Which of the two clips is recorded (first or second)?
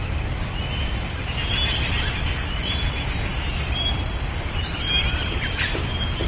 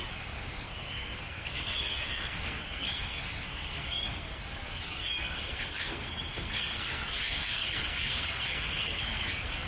first